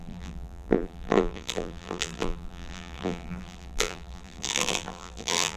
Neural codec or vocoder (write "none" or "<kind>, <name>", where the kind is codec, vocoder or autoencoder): vocoder, BigVGAN v2